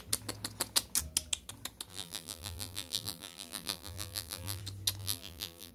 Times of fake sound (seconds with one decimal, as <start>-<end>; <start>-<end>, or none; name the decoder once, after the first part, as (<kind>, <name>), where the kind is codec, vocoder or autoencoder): 1.9-4.6 (vocoder, BigVGAN v2); 5.0-5.7